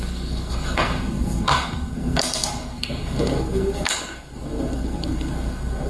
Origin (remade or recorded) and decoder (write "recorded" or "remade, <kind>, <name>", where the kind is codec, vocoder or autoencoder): remade, codec, SNAC